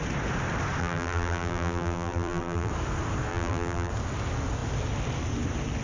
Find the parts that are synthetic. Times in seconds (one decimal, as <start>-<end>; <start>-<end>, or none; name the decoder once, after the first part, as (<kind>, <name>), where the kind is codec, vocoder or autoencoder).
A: 0.8-2.7 (vocoder, BigVGAN v2); 3.3-3.9